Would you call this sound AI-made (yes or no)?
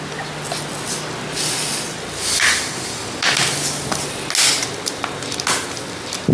no